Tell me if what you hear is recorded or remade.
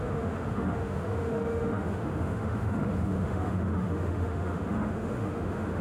remade